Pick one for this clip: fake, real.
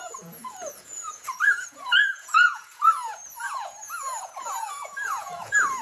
fake